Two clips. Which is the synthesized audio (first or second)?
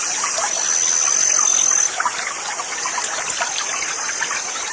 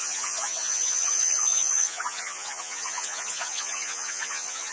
second